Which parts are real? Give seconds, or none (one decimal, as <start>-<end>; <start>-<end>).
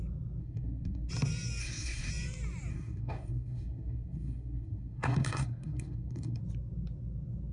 0.0-0.4; 1.1-1.6; 2.1-2.7; 6.4-7.5